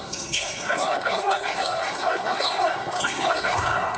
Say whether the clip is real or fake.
fake